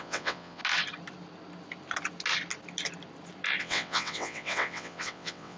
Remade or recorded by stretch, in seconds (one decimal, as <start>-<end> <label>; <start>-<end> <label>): 0.0-0.6 remade; 0.6-3.6 recorded; 3.6-5.6 remade